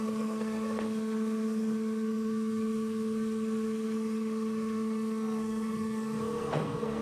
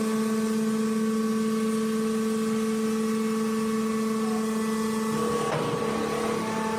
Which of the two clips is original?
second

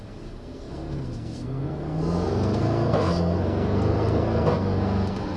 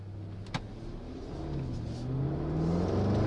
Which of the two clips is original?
second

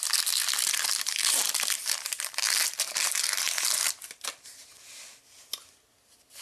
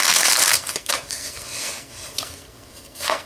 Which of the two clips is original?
first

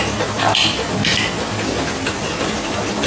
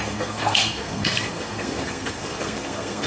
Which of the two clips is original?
first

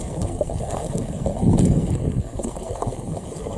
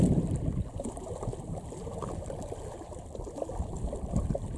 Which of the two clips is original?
second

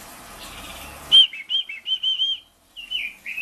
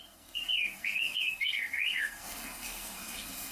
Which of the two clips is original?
first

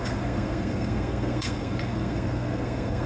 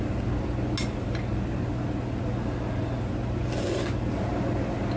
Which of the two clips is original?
second